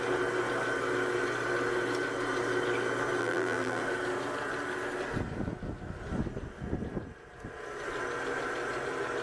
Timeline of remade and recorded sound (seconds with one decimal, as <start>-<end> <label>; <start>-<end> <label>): 0.0-3.2 recorded; 3.2-3.8 remade; 3.8-9.2 recorded

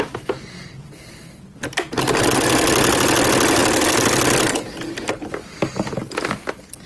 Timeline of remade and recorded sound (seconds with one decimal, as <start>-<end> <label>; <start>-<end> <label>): 0.0-6.9 recorded

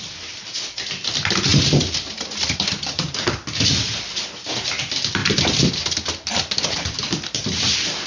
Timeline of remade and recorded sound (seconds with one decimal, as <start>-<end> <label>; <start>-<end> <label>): 0.0-5.2 remade; 5.2-6.7 recorded; 6.7-8.1 remade

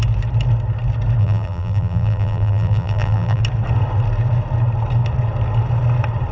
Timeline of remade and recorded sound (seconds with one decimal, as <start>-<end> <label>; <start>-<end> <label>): 0.0-1.2 recorded; 1.2-3.4 remade; 3.4-6.3 recorded

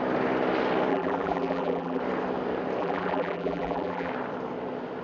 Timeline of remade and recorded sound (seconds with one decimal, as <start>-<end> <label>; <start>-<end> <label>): 0.0-0.9 recorded; 0.9-2.0 remade; 2.0-2.8 recorded; 2.8-4.1 remade; 4.1-5.0 recorded

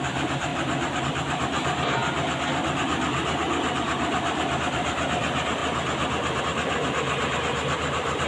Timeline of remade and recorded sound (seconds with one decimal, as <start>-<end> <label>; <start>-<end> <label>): 0.0-5.6 remade; 5.6-6.4 recorded; 6.4-8.3 remade

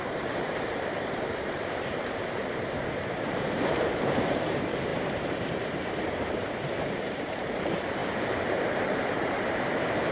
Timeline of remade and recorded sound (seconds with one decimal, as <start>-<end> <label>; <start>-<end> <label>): 0.0-8.0 remade; 8.0-8.5 recorded; 8.5-10.1 remade